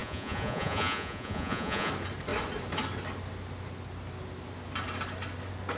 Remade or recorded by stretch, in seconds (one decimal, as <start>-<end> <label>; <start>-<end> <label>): 0.0-1.9 remade; 1.9-5.8 recorded